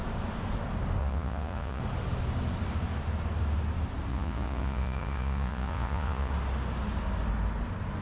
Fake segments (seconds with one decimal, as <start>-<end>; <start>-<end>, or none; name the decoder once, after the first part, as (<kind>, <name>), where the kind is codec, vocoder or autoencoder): 1.0-1.8 (vocoder, Vocos); 4.1-6.3